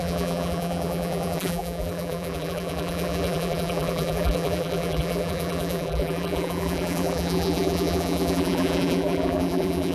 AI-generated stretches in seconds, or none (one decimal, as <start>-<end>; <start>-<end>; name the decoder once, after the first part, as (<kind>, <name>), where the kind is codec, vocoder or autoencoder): 0.0-9.9 (vocoder, BigVGAN v2)